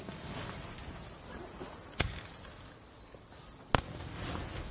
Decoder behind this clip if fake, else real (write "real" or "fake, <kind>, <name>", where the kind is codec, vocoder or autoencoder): real